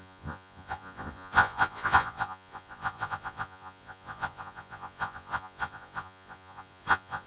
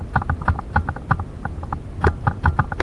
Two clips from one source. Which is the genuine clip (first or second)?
second